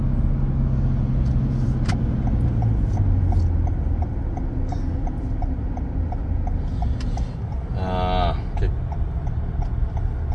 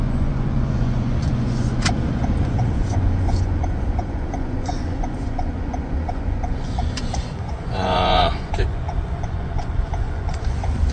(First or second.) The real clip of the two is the first